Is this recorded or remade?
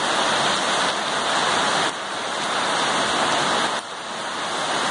recorded